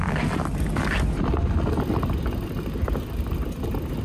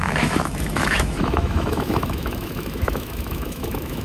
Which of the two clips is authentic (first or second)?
first